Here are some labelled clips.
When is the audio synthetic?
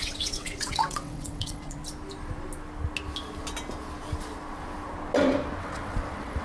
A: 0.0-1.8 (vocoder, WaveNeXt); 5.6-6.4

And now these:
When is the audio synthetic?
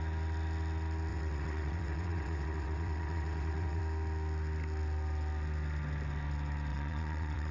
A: 1.1-3.8 (vocoder, WaveNeXt); 6.7-7.5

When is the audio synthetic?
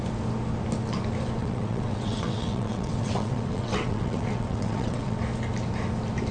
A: 1.4-5.2 (vocoder, WaveNeXt)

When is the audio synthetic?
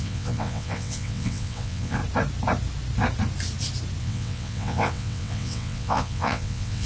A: 0.0-2.0 (vocoder, WaveNeXt); 4.0-6.9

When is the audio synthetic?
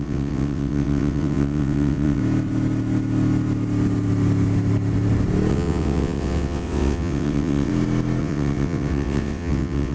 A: 0.0-2.2 (vocoder, WaveNeXt); 5.5-7.7; 8.2-9.9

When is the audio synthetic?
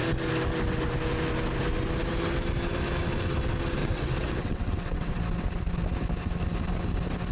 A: 3.8-5.2 (vocoder, WaveNeXt)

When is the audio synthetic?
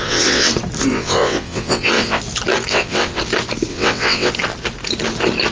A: 0.0-0.5 (vocoder, WaveNeXt); 0.9-2.2; 2.7-3.2; 3.7-4.3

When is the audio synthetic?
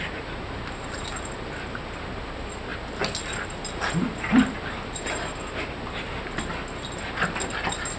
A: none